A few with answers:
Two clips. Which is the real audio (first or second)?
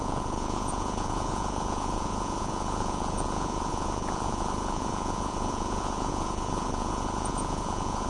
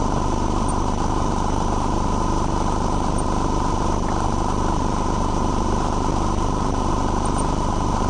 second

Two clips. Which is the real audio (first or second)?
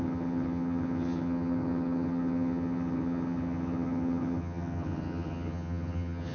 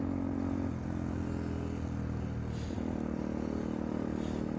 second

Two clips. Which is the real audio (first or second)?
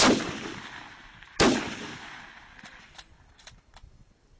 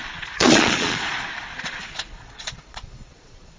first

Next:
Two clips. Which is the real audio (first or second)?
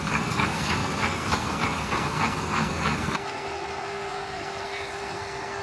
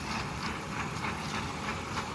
second